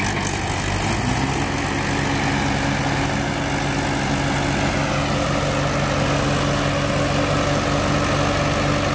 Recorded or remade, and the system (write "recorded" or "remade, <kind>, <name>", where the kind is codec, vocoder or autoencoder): recorded